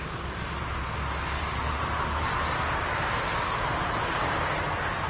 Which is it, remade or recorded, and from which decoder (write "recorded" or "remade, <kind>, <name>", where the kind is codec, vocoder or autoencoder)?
recorded